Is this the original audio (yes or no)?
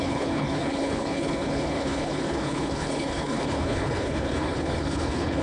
no